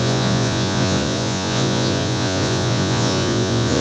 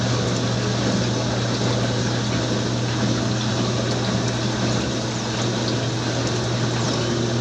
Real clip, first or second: second